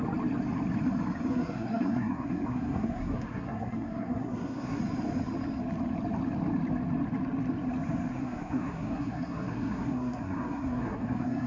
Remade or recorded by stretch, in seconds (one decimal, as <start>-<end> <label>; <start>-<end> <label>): 0.0-1.3 recorded; 1.3-4.8 remade; 4.8-8.2 recorded; 8.2-11.5 remade